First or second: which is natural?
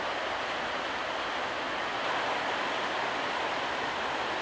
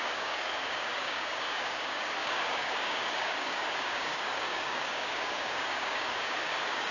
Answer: first